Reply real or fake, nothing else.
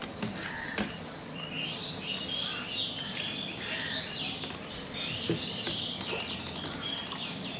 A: real